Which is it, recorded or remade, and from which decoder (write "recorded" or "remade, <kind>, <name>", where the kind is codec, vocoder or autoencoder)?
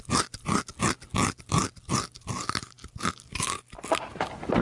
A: recorded